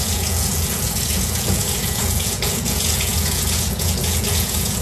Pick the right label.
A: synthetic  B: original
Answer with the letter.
A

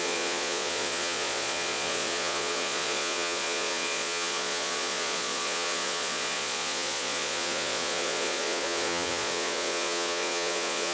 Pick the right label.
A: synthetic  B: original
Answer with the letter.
A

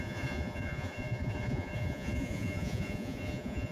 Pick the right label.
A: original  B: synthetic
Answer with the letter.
B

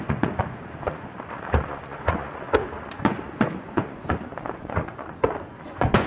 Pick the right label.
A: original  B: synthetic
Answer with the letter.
B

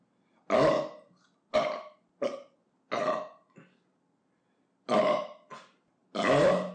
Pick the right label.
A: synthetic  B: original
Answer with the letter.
B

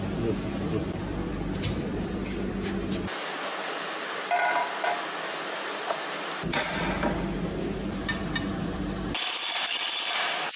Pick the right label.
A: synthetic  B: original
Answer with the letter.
B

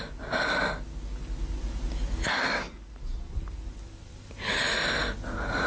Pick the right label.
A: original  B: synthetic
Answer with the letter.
A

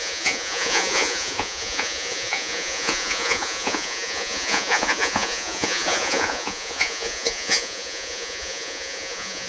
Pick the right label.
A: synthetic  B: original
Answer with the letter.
A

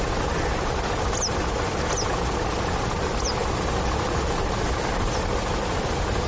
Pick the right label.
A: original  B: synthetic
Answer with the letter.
A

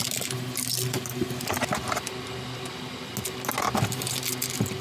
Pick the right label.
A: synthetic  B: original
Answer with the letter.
B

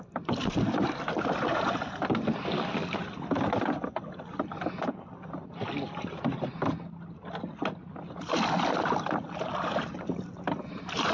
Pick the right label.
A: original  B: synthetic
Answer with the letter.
A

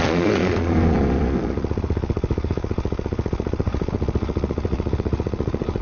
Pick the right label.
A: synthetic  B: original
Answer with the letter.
A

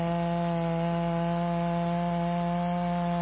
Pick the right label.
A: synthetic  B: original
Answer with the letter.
B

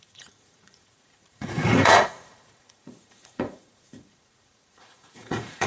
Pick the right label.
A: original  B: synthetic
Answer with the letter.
B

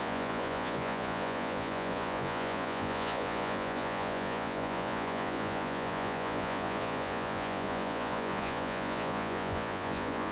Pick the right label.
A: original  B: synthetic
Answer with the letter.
B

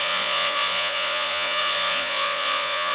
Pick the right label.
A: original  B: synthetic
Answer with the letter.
B